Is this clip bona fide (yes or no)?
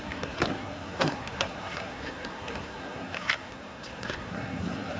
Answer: no